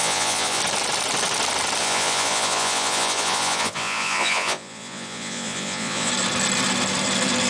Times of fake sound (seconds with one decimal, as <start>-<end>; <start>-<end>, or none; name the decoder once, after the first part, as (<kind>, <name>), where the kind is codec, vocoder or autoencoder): 0.0-0.6 (vocoder, Vocos); 1.8-6.1